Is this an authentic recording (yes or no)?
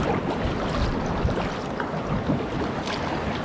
yes